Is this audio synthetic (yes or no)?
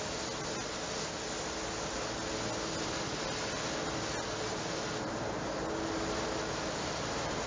no